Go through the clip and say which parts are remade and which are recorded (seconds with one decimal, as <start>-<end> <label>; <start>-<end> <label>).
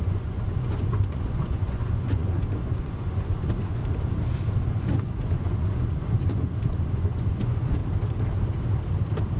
0.0-3.8 remade; 3.8-4.7 recorded; 4.7-7.8 remade; 7.8-9.4 recorded